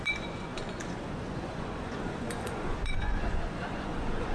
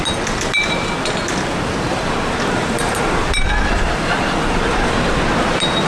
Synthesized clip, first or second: first